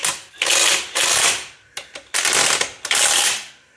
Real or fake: real